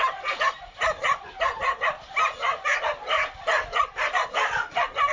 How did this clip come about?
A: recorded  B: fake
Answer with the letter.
A